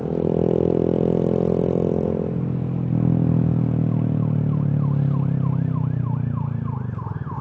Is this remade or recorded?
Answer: recorded